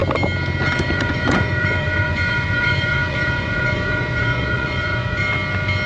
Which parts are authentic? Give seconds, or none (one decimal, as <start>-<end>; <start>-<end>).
0.0-0.8; 5.2-5.9